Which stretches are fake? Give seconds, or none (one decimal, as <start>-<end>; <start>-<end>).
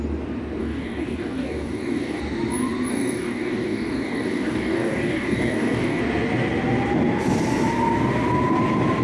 0.6-2.2; 2.9-6.0